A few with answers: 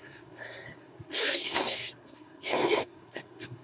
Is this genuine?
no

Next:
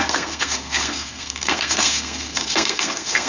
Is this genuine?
no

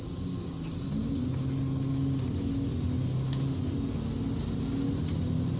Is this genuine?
yes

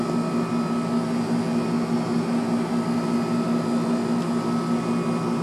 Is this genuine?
yes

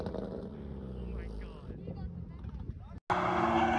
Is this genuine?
yes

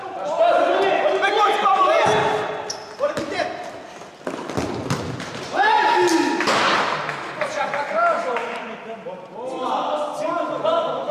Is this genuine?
yes